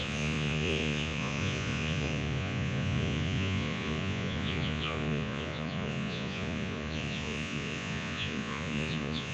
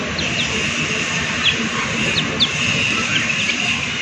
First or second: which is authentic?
second